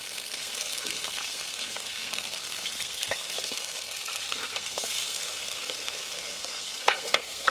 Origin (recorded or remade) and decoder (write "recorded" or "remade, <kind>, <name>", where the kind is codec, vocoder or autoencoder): remade, codec, SNAC